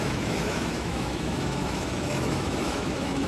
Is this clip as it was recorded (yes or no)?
no